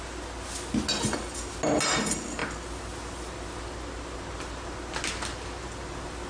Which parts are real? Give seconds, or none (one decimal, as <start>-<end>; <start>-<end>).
0.0-6.3